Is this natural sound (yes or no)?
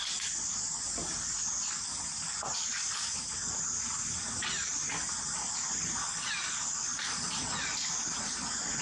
yes